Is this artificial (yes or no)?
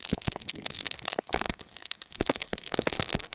yes